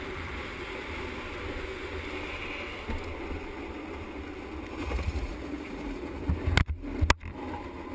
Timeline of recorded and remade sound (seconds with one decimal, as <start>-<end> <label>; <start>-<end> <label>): 0.0-4.8 recorded; 4.8-6.2 remade; 6.2-7.9 recorded